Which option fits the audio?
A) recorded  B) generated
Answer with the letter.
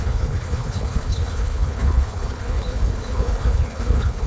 B